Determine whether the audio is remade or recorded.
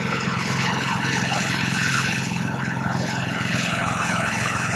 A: remade